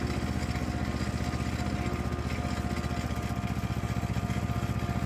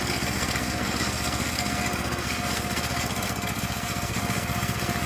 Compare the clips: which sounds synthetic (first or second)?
second